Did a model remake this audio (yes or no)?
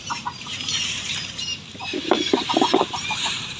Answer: yes